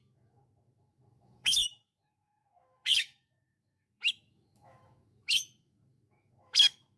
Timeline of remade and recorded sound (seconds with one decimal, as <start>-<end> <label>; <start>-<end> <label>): 0.0-7.0 remade